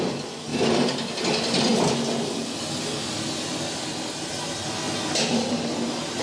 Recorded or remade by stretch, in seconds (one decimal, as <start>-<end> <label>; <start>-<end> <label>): 0.0-6.2 recorded